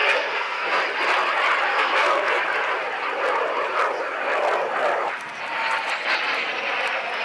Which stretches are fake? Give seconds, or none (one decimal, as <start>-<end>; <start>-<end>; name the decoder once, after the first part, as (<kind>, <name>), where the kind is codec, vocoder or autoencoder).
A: 0.0-0.8 (codec, SNAC); 1.7-2.4